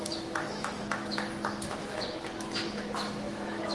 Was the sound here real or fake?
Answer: fake